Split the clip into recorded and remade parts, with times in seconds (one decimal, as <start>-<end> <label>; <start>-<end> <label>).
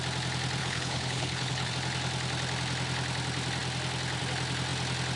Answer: 0.0-0.6 recorded; 0.6-1.7 remade; 1.7-5.2 recorded